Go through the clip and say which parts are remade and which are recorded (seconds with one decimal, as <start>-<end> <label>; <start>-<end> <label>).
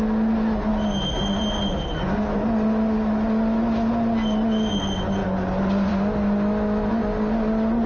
0.0-7.9 recorded